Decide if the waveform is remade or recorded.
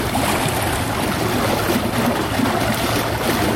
recorded